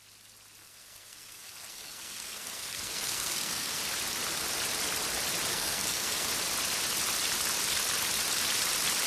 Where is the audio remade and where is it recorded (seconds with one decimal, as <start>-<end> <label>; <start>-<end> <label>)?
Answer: 0.0-0.6 recorded; 0.6-3.8 remade; 3.8-5.5 recorded; 5.5-6.3 remade; 6.3-9.1 recorded